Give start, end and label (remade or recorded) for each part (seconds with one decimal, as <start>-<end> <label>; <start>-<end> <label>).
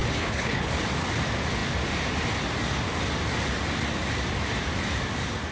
0.0-0.7 remade; 0.7-5.5 recorded